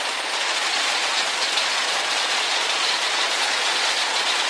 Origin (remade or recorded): remade